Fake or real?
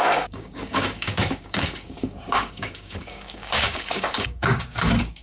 fake